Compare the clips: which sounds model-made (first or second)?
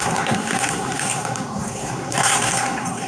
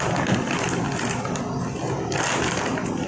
first